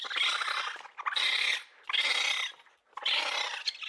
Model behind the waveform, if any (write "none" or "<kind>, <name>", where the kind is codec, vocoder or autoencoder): none